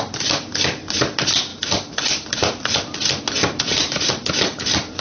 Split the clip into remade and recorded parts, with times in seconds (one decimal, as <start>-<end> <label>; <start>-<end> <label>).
0.0-5.0 recorded